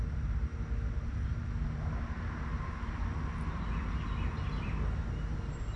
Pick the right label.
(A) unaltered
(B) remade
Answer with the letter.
A